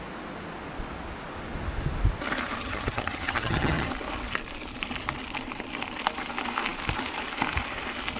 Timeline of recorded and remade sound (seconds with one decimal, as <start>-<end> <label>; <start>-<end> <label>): 0.0-2.6 recorded; 2.6-3.9 remade; 3.9-8.2 recorded